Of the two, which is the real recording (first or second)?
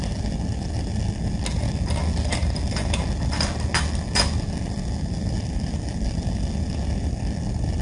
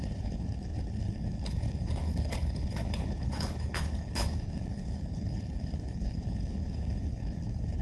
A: first